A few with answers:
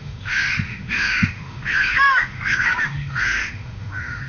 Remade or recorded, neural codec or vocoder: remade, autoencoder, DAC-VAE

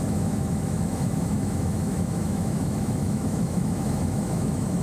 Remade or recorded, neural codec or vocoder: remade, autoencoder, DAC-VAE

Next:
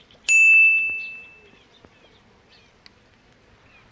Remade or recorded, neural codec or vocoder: recorded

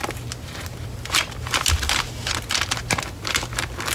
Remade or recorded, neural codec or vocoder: recorded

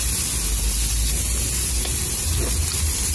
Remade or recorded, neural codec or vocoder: recorded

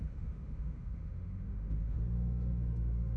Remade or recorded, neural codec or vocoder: remade, autoencoder, DAC-VAE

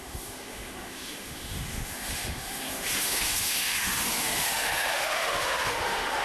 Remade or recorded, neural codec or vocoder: remade, autoencoder, DAC-VAE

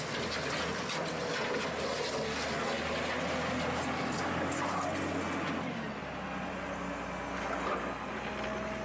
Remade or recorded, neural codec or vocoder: recorded